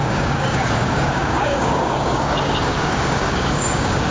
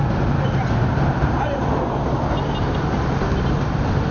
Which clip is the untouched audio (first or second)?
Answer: second